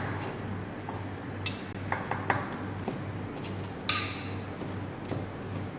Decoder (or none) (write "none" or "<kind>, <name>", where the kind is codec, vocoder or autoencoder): none